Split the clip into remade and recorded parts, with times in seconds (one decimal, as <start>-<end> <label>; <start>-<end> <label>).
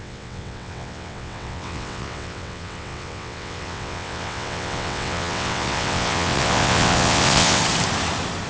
0.0-7.6 remade; 7.6-8.5 recorded